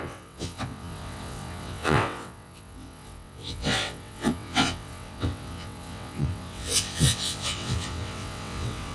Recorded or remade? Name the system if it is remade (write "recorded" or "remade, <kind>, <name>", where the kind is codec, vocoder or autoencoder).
remade, vocoder, WaveNeXt